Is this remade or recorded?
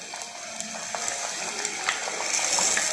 recorded